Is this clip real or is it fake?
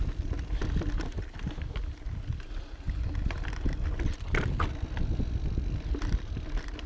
real